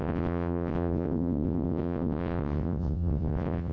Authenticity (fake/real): fake